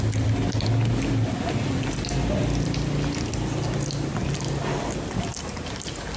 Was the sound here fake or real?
real